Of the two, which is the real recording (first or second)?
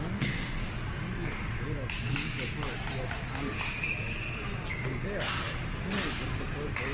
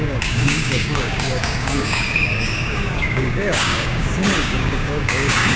first